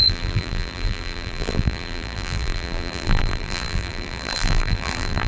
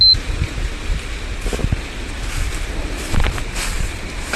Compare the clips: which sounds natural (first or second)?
second